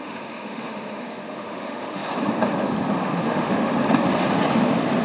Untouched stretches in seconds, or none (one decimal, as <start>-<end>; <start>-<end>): 2.0-3.0; 3.7-5.0